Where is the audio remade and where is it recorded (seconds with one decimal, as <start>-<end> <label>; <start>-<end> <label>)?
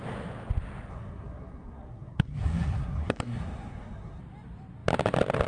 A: 0.0-0.9 recorded; 0.9-4.2 remade; 4.2-5.5 recorded